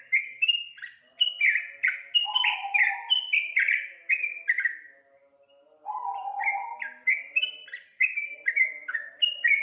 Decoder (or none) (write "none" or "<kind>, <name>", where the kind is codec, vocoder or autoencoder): none